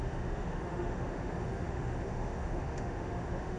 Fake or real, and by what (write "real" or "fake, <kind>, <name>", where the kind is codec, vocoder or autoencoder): fake, autoencoder, DAC-VAE